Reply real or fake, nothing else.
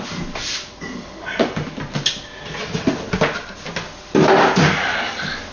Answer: real